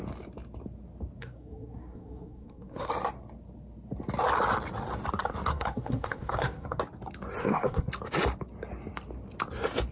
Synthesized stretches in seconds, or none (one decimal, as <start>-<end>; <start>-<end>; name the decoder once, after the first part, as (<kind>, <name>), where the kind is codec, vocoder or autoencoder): 1.2-2.9 (codec, SNAC); 5.5-6.8; 7.4-7.9